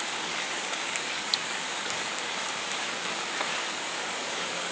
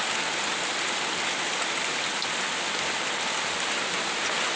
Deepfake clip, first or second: first